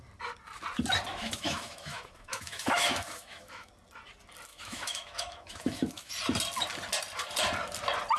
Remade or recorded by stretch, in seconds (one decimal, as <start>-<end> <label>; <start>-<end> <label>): 0.0-1.1 recorded; 1.1-3.7 remade; 3.7-4.5 recorded; 4.5-6.1 remade; 6.1-8.2 recorded